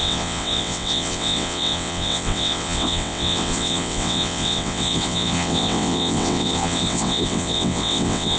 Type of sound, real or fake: fake